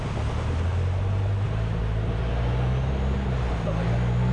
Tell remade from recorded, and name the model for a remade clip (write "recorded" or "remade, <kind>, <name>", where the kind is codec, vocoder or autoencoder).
recorded